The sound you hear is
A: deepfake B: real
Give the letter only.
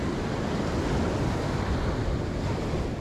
B